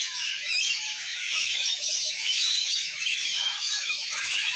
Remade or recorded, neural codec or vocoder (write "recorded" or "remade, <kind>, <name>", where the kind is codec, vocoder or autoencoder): remade, autoencoder, DAC-VAE